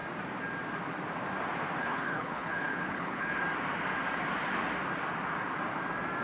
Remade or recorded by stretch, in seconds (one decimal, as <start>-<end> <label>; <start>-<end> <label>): 0.0-1.8 recorded; 1.8-3.4 remade; 3.4-6.2 recorded

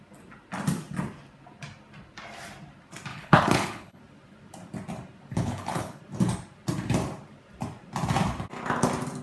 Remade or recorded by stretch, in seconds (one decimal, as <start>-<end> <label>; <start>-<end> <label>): 0.0-3.1 recorded; 3.1-4.0 remade; 4.0-5.3 recorded; 5.3-6.0 remade; 6.0-9.2 recorded

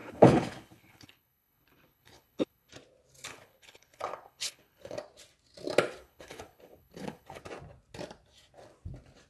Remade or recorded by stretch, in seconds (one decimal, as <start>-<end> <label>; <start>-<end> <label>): 0.0-2.7 remade; 2.7-3.3 recorded; 3.3-5.0 remade; 5.0-6.0 recorded; 6.0-7.4 remade; 7.4-9.3 recorded

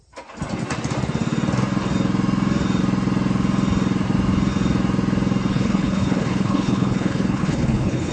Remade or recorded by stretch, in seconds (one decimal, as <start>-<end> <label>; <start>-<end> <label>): 0.0-5.5 recorded; 5.5-8.1 remade

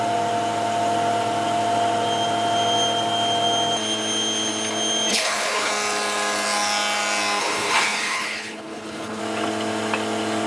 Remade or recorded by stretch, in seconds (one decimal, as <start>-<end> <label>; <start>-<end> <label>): 0.0-5.1 recorded; 5.1-5.7 remade; 5.7-7.4 recorded; 7.4-9.2 remade; 9.2-10.5 recorded